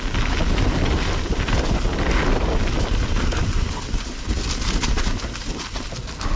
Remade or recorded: recorded